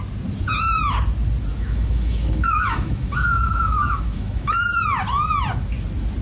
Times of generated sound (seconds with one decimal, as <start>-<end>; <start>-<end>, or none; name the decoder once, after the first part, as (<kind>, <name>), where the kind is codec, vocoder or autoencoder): 1.5-4.7 (autoencoder, DAC-VAE)